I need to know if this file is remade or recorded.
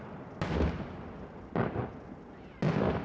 recorded